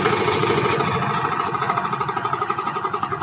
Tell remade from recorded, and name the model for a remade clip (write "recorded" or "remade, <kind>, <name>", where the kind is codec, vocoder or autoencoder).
remade, vocoder, Vocos